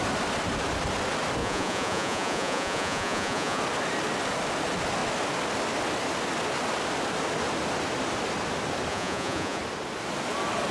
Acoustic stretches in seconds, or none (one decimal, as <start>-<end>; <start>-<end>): 0.0-1.4; 3.6-8.9; 9.6-10.7